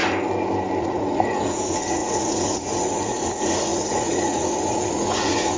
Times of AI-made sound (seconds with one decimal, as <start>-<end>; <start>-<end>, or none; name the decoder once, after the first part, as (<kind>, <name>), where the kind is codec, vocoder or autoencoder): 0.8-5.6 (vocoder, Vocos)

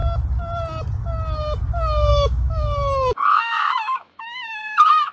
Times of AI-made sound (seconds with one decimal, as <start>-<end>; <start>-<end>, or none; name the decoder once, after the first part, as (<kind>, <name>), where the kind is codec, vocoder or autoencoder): 2.1-4.6 (autoencoder, DAC-VAE)

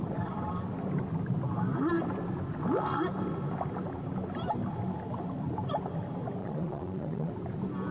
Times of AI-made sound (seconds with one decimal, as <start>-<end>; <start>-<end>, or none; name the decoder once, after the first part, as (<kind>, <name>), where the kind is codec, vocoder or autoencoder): 6.4-7.3 (vocoder, Vocos)